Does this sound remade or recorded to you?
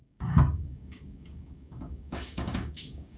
remade